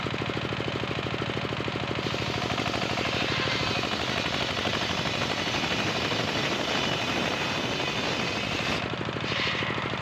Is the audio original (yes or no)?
yes